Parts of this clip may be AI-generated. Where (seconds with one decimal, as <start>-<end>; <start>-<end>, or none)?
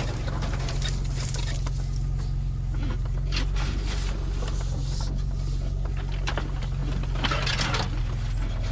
none